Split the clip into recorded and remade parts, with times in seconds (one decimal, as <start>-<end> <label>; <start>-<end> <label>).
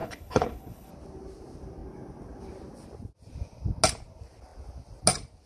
0.0-0.9 remade; 0.9-5.5 recorded